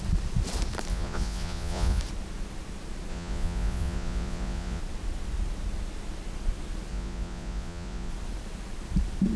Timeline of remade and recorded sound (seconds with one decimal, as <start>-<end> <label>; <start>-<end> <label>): 0.0-0.9 recorded; 0.9-2.0 remade; 2.0-3.1 recorded; 3.1-4.8 remade; 4.8-6.9 recorded; 6.9-8.1 remade; 8.1-9.4 recorded